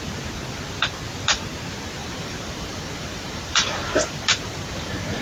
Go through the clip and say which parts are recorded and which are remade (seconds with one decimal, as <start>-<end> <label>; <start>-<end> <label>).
0.0-2.0 recorded; 2.0-5.2 remade